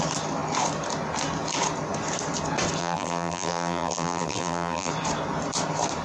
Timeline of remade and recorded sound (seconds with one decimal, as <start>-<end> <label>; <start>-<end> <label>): 0.0-2.8 recorded; 2.8-4.9 remade; 4.9-6.0 recorded